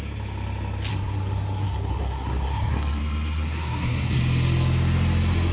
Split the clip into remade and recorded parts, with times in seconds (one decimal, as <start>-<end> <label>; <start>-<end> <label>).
0.0-0.9 recorded; 0.9-4.2 remade; 4.2-5.5 recorded